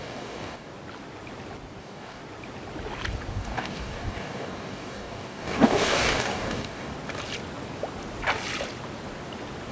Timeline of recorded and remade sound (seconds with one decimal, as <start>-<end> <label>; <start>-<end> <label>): 0.0-0.7 remade; 0.7-1.8 recorded; 1.8-2.2 remade; 2.2-3.3 recorded; 3.3-6.9 remade; 6.9-9.7 recorded